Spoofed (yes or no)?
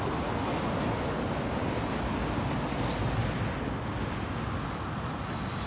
no